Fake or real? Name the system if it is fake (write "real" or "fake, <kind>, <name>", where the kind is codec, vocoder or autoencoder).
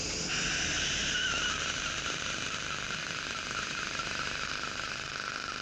fake, vocoder, BigVGAN v2